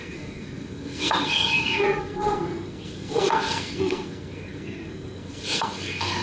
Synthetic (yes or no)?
yes